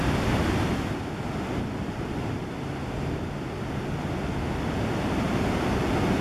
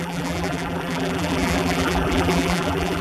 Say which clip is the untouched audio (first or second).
first